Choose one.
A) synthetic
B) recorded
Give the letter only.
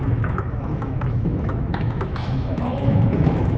A